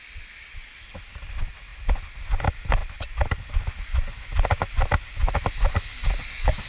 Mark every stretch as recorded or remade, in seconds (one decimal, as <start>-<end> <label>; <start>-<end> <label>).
0.0-6.7 recorded